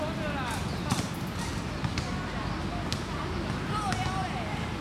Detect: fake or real real